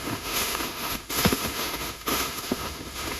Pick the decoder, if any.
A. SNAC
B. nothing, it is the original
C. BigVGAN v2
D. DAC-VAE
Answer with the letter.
D